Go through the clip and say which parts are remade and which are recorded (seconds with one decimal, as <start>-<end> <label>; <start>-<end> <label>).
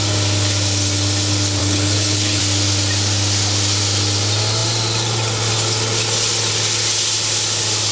0.0-1.6 recorded; 1.6-2.4 remade; 2.4-7.9 recorded